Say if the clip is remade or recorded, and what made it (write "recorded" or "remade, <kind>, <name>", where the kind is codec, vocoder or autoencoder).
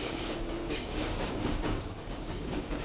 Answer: remade, codec, DAC